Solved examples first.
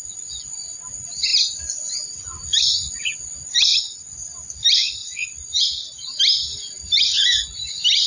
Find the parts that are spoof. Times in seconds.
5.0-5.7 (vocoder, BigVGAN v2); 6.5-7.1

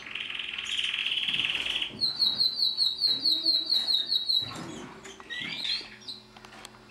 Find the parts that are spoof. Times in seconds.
1.0-1.7 (vocoder, BigVGAN v2)

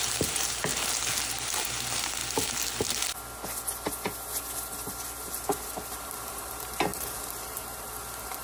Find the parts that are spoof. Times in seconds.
0.0-0.7 (vocoder, BigVGAN v2); 1.3-2.2; 4.9-8.4

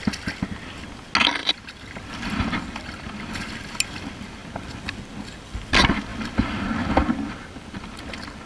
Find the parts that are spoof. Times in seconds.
1.4-3.6 (vocoder, BigVGAN v2); 4.4-5.6; 6.1-8.1